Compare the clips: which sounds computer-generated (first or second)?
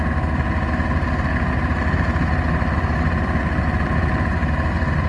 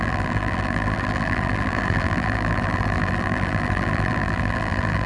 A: second